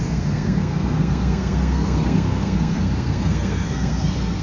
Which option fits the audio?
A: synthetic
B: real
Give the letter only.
A